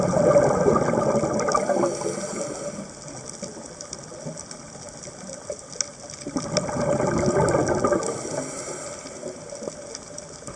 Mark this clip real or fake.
real